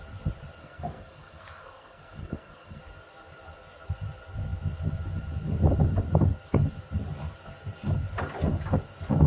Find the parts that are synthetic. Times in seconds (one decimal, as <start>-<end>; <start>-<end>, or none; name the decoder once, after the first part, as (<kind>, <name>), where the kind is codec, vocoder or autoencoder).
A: 0.6-2.8 (codec, SNAC)